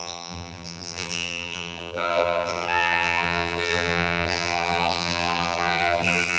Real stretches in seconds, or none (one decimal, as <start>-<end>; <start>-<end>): none

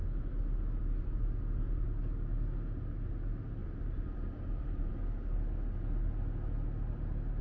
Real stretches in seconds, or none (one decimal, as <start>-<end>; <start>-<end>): 2.0-3.6; 4.9-7.4